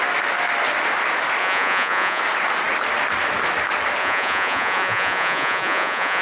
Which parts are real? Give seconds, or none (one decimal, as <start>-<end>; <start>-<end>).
0.0-1.4; 2.2-4.0